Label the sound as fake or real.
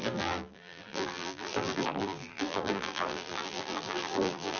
fake